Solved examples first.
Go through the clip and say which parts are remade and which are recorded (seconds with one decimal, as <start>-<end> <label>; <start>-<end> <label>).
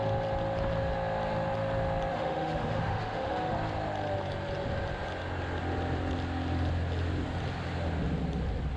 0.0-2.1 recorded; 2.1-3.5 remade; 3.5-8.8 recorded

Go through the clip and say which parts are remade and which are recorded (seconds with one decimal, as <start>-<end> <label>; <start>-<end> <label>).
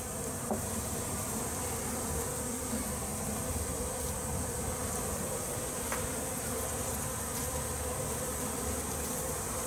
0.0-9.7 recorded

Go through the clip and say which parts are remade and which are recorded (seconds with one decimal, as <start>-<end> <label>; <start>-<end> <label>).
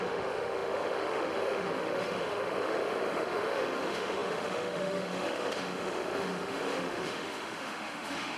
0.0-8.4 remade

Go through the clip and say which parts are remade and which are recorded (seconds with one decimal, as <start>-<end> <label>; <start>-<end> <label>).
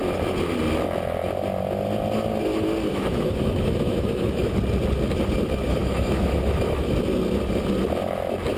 0.0-2.9 recorded; 2.9-4.5 remade; 4.5-5.8 recorded; 5.8-6.9 remade; 6.9-8.6 recorded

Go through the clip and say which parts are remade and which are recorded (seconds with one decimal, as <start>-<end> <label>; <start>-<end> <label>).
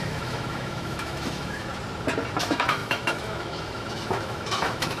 0.0-1.7 remade; 1.7-2.4 recorded; 2.4-5.0 remade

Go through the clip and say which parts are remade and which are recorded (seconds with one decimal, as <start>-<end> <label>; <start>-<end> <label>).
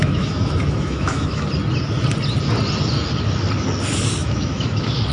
0.0-1.5 remade; 1.5-4.2 recorded; 4.2-5.1 remade